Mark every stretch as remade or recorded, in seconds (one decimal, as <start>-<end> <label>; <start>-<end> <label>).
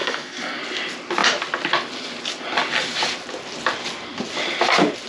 0.0-0.6 remade; 0.6-5.1 recorded